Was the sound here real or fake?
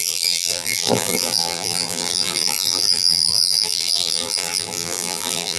fake